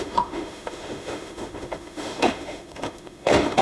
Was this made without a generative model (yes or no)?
no